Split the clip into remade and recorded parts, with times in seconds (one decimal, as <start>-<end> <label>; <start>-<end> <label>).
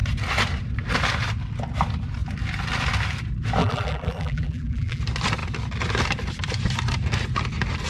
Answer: 0.0-3.6 recorded; 3.6-5.0 remade; 5.0-7.9 recorded